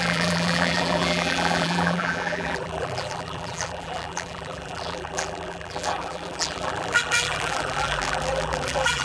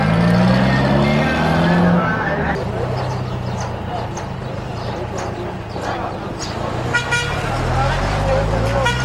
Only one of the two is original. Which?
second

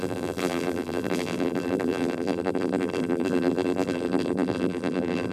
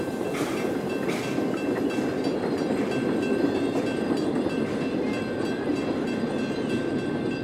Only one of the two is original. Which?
second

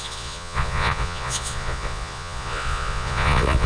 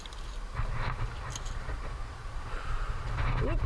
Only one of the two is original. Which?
second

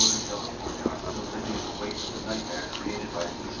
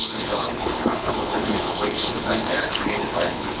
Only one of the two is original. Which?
first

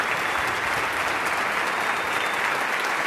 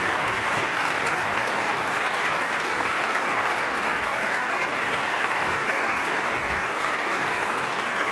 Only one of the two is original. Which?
first